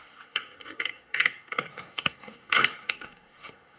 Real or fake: fake